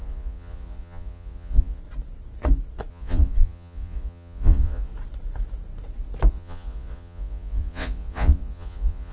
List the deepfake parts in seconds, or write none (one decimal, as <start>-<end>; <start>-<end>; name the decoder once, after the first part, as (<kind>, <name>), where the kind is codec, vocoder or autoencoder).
0.0-1.8 (vocoder, Vocos); 2.9-4.9; 6.3-9.1